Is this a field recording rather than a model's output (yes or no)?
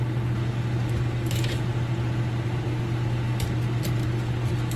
yes